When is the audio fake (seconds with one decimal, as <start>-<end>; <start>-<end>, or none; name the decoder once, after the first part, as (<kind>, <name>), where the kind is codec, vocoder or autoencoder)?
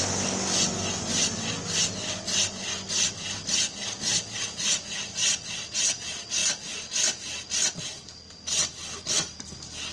none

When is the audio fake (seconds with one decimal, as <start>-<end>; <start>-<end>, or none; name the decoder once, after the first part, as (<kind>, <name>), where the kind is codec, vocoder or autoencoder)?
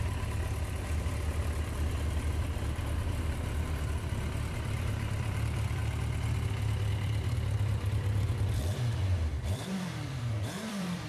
0.0-5.8 (vocoder, BigVGAN v2); 6.9-11.1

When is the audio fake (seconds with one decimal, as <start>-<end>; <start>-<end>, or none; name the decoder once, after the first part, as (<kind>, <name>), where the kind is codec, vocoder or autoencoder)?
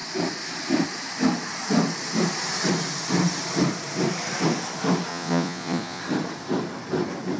5.1-6.0 (vocoder, Vocos)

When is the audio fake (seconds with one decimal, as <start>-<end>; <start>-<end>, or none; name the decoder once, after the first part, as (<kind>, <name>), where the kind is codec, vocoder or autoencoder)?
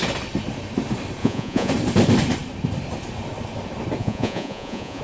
1.2-1.7 (vocoder, Vocos); 4.0-5.0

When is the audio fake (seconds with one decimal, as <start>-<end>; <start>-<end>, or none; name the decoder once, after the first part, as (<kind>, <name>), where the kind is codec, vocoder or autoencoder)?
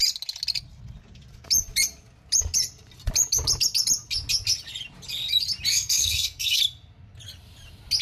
5.7-6.6 (codec, SNAC)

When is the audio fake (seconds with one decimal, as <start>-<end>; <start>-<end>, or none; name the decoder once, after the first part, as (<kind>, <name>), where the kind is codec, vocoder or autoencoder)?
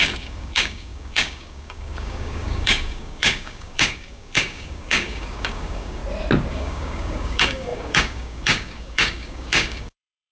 0.0-6.0 (codec, DAC); 6.5-10.3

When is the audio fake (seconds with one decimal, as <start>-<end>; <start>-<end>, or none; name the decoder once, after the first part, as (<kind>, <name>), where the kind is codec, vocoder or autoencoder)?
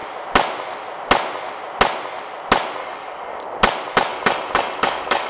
2.8-3.4 (codec, DAC); 4.1-5.3